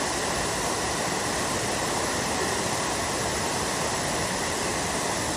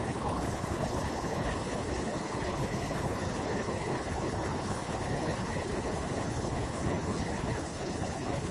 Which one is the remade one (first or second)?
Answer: second